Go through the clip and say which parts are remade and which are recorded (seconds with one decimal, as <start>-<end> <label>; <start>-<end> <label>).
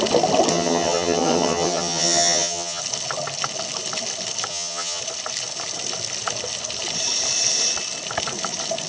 0.0-0.5 recorded; 0.5-2.8 remade; 2.8-4.5 recorded; 4.5-5.0 remade; 5.0-8.9 recorded